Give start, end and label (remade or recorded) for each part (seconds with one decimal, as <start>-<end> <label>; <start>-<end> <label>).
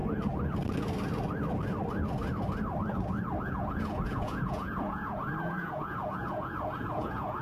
0.0-3.4 recorded; 3.4-7.4 remade